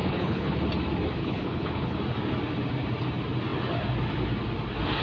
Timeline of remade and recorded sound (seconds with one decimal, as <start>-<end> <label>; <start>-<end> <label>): 0.0-0.6 remade; 0.6-1.2 recorded; 1.2-2.0 remade; 2.0-5.0 recorded